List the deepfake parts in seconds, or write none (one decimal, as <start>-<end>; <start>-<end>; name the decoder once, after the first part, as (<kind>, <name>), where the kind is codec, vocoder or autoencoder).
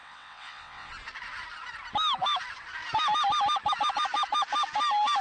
0.0-0.9 (vocoder, WaveNeXt)